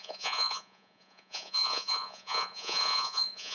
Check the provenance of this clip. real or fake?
fake